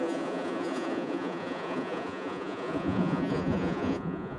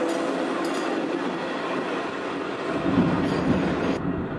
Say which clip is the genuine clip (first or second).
second